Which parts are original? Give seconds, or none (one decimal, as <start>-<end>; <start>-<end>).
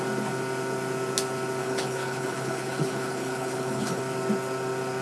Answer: 0.0-1.6; 4.0-5.0